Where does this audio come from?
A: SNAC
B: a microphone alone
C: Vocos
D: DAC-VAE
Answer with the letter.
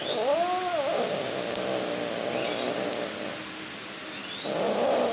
B